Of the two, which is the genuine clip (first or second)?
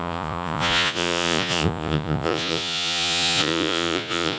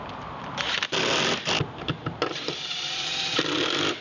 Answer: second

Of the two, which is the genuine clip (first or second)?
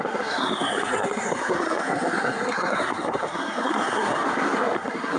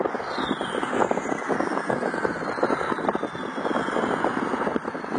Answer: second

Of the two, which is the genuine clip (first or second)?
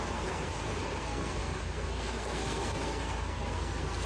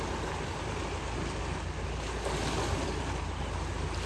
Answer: second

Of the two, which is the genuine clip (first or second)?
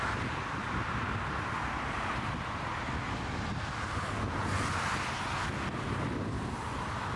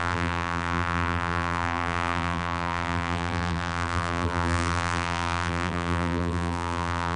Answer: first